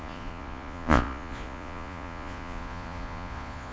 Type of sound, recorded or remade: remade